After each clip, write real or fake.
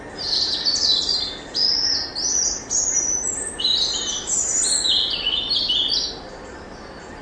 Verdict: real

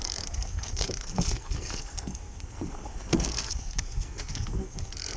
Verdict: fake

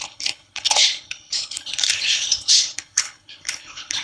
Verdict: fake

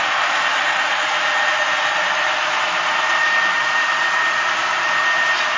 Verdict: fake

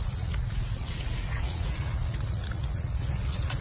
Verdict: fake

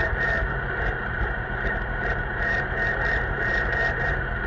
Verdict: fake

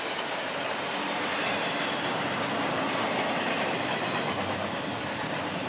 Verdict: real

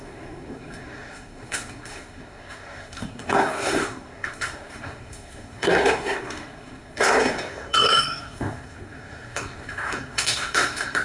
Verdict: fake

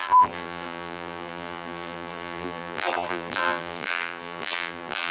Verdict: fake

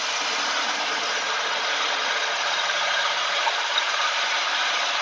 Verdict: fake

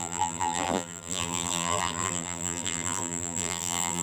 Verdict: fake